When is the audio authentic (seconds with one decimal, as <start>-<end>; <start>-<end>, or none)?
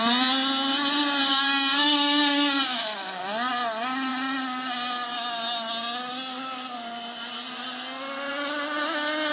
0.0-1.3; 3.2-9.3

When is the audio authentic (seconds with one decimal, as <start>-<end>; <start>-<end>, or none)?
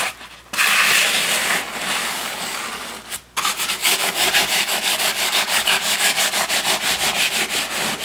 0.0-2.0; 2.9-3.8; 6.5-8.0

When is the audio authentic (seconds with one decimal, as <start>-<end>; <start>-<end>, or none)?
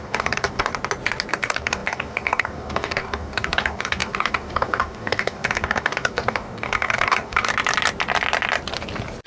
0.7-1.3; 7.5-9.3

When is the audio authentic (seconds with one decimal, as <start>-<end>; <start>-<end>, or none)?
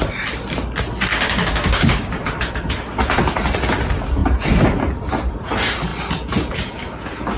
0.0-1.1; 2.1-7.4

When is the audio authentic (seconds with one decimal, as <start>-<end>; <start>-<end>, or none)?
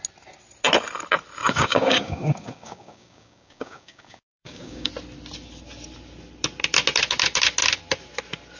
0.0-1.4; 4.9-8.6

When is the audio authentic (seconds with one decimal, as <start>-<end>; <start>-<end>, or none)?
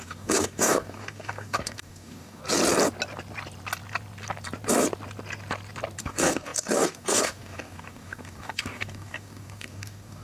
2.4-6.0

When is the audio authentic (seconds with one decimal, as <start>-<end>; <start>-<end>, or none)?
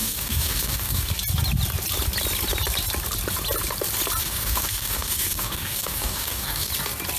1.1-4.2; 6.7-7.2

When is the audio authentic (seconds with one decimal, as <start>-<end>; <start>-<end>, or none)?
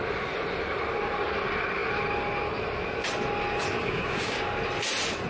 0.0-3.8; 4.4-5.3